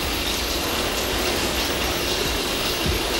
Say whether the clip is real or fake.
fake